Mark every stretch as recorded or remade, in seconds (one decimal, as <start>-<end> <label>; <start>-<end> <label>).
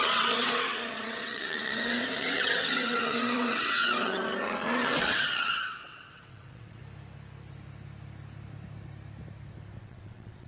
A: 0.0-6.8 remade; 6.8-9.8 recorded; 9.8-10.5 remade